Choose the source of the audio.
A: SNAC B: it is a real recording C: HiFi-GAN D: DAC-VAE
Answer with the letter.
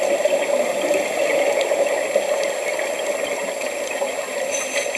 B